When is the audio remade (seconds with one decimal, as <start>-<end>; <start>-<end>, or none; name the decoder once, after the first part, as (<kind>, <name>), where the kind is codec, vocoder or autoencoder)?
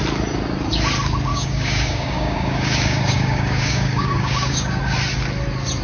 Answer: 1.3-4.8 (codec, DAC)